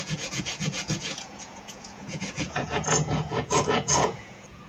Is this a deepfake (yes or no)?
yes